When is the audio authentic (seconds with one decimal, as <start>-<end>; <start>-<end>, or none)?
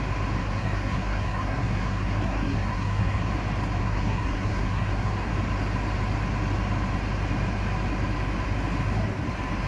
0.0-0.4; 3.3-3.8; 5.3-9.7